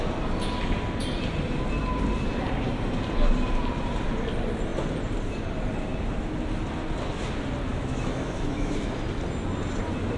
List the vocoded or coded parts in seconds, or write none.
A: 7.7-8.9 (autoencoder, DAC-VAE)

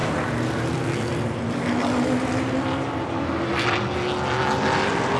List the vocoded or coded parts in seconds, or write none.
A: none